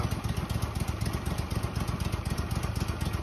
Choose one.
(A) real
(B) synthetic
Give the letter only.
A